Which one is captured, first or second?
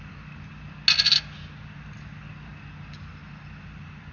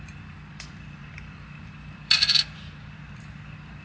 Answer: first